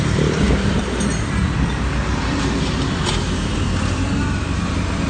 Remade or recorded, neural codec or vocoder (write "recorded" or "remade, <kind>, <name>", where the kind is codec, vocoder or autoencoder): remade, vocoder, BigVGAN v2